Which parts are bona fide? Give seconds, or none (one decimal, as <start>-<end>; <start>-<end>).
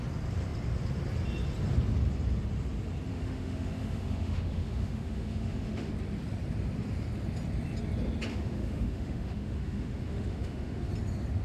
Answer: 0.0-3.1; 5.9-8.3; 10.9-11.4